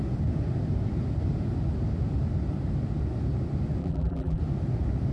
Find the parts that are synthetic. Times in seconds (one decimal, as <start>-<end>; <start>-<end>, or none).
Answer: 3.8-4.4